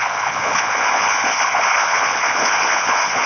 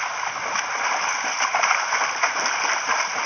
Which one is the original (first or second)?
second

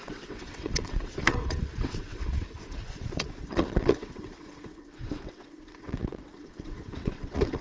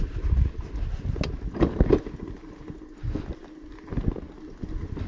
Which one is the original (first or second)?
second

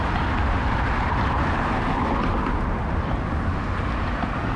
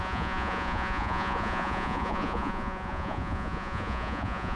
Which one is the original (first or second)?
first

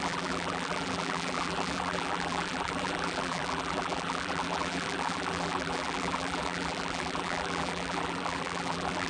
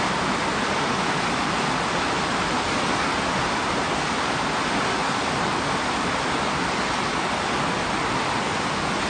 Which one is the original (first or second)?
second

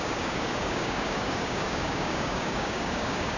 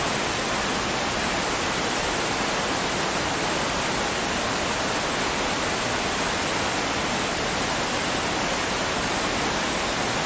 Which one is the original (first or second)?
second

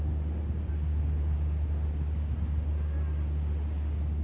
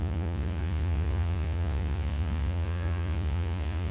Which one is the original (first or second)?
first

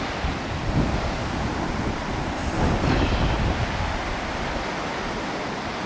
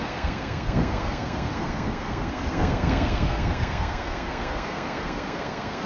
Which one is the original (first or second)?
first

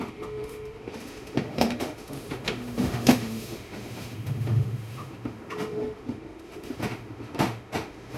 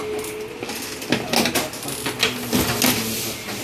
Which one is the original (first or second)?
second